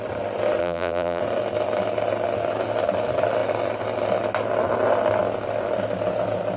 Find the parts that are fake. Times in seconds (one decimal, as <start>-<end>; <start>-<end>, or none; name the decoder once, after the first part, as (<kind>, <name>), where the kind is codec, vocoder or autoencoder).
0.6-1.2 (vocoder, BigVGAN v2)